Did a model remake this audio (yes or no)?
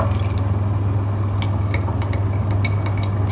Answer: no